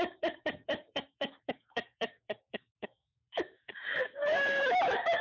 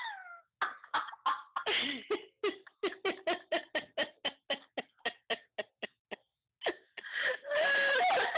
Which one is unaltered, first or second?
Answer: second